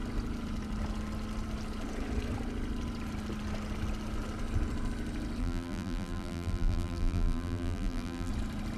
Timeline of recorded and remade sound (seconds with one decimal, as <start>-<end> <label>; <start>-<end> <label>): 0.0-5.4 recorded; 5.4-8.3 remade; 8.3-8.8 recorded